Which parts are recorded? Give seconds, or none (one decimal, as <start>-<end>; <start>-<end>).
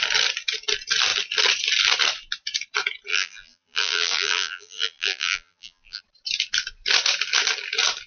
0.0-3.1; 6.0-8.1